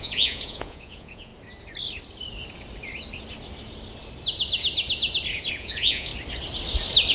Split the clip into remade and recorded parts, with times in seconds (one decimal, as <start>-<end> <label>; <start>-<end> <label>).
0.0-1.3 remade; 1.3-5.5 recorded; 5.5-6.1 remade; 6.1-7.1 recorded